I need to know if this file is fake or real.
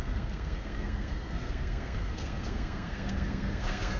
fake